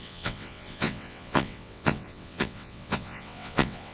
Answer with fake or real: fake